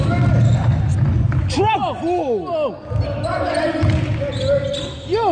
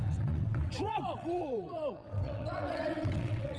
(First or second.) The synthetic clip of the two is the second